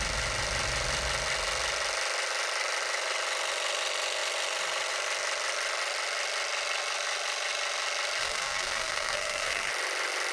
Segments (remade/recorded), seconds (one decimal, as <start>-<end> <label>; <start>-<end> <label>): 0.0-8.2 recorded; 8.2-9.7 remade; 9.7-10.3 recorded